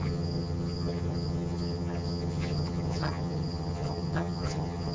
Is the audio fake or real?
fake